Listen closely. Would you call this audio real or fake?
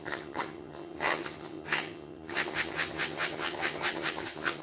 fake